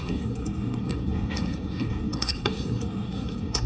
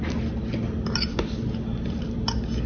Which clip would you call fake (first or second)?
first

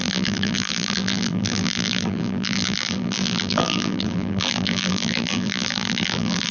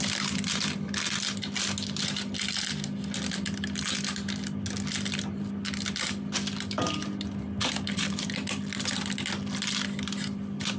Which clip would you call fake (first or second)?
first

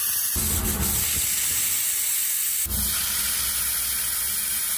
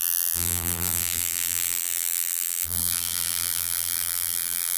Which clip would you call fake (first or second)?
second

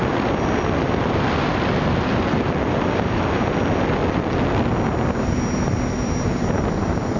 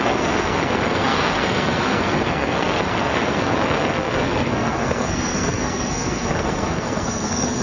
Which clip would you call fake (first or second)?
second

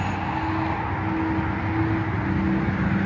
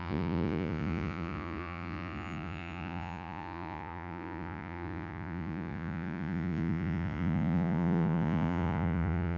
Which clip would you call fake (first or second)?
second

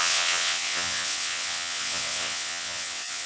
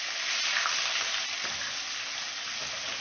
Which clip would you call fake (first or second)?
first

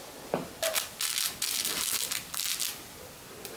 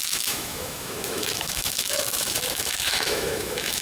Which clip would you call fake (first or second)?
second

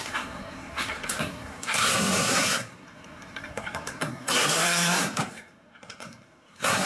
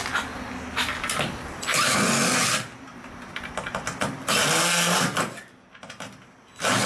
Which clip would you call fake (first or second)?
first